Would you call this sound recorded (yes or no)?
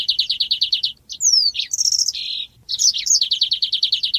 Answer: yes